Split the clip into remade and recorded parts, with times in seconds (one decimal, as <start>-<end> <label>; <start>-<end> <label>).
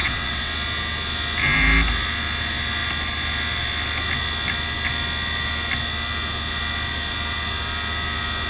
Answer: 0.0-0.5 remade; 0.5-8.5 recorded